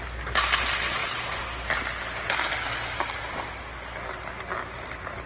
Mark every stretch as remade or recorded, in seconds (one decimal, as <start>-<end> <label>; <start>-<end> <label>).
0.0-5.3 recorded